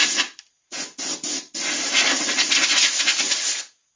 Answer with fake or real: real